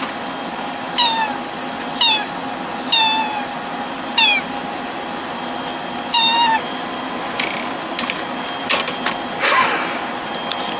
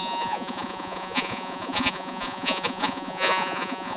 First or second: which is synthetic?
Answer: second